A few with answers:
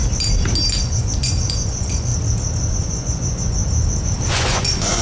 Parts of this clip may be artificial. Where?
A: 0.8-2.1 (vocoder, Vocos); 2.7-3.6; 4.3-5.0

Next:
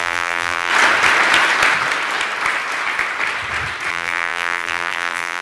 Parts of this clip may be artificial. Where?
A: 0.0-0.7 (vocoder, BigVGAN v2); 3.9-5.4

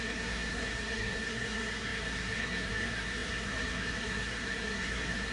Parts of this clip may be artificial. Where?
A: 0.0-5.3 (codec, SNAC)

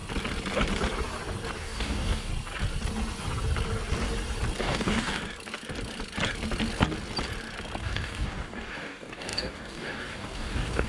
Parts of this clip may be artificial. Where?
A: 1.6-2.3 (codec, DAC); 4.6-5.2; 7.8-10.9

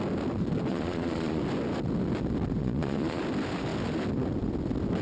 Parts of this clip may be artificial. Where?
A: 0.7-1.4 (vocoder, Vocos); 2.6-3.2

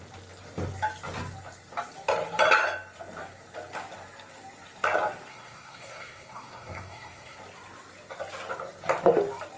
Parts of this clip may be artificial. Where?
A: 5.3-7.4 (codec, SNAC)

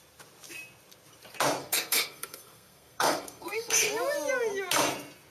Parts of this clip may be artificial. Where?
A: 1.6-3.9 (codec, SNAC)

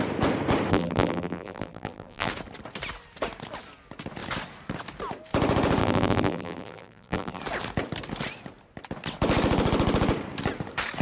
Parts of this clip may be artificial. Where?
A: 0.7-2.3 (vocoder, BigVGAN v2); 5.8-7.4